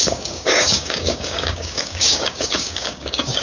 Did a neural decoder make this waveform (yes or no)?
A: yes